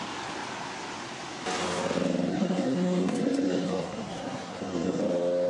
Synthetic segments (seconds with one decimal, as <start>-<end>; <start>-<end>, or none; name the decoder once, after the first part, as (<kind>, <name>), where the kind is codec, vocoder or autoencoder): 2.3-5.0 (codec, SNAC)